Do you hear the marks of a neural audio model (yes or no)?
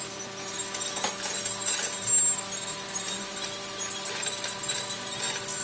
no